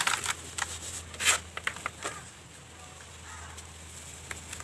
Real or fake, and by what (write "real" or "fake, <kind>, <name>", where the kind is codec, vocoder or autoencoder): real